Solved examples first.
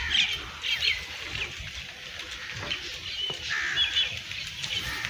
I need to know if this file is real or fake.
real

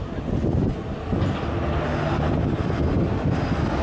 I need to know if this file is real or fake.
real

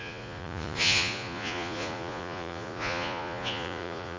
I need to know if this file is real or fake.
fake